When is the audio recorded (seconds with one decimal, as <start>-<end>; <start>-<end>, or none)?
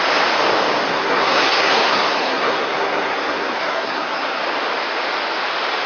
0.0-0.9; 4.4-5.9